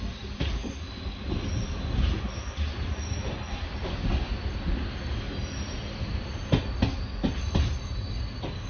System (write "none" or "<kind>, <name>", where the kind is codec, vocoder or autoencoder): none